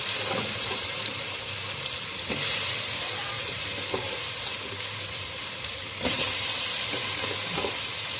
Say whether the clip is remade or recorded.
remade